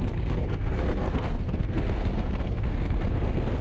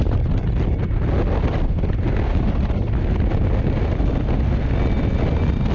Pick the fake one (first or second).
first